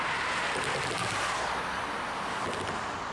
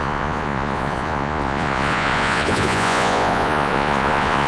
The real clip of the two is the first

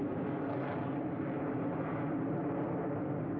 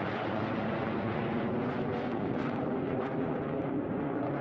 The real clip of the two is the first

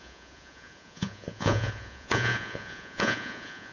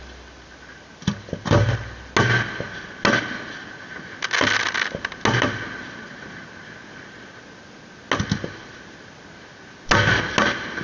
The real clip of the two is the second